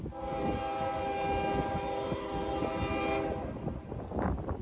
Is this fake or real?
real